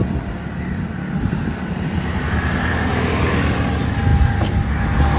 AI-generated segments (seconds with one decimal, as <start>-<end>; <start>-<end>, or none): none